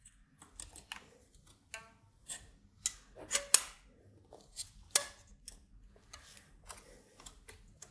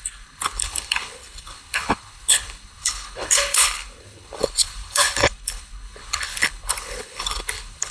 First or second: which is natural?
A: first